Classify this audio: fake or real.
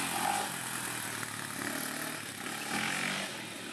real